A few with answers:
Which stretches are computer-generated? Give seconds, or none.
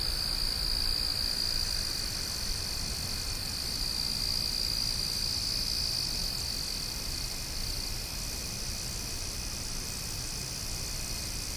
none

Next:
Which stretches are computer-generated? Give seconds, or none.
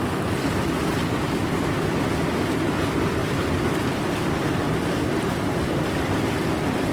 none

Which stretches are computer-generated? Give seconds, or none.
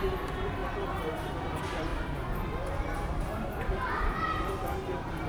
none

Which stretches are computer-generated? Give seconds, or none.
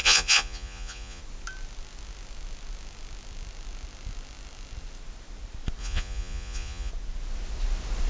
0.0-1.2; 5.8-6.9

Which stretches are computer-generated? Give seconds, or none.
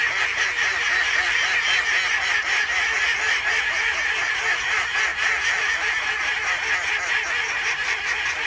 none